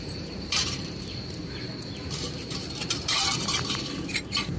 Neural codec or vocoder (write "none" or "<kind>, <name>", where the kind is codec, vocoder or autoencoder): vocoder, BigVGAN v2